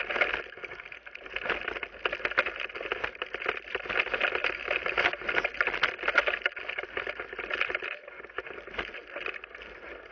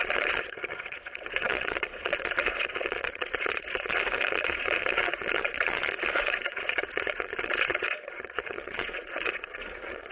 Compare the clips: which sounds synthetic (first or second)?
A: second